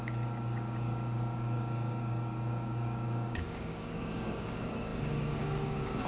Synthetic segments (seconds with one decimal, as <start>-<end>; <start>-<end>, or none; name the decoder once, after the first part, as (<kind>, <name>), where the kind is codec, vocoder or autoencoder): 0.0-6.1 (codec, DAC)